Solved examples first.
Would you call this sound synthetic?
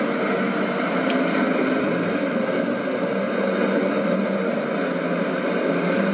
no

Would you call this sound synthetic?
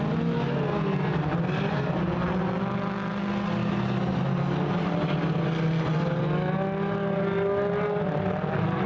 no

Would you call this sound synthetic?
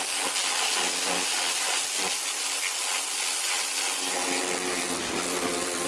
no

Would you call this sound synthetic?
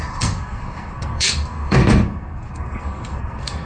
yes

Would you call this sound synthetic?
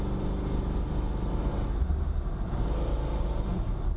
no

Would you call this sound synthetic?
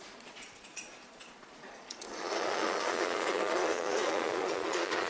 yes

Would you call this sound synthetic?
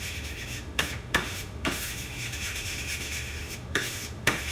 yes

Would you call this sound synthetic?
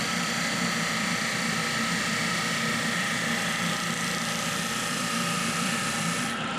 yes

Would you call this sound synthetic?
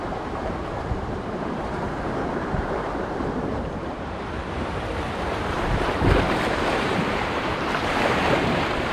yes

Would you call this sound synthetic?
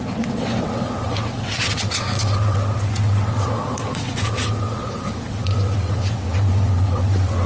yes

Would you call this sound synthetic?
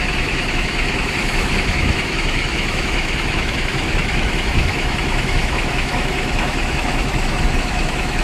yes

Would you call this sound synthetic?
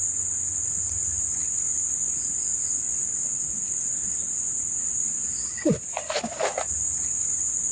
no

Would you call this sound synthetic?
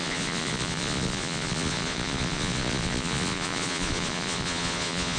yes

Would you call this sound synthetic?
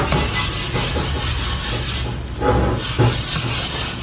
no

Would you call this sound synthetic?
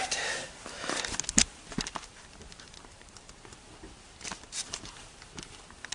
no